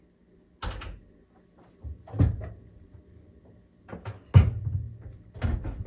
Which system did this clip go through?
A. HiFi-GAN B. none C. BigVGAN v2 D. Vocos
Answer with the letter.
B